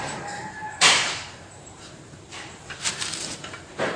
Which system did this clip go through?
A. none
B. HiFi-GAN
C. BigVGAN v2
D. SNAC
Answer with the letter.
C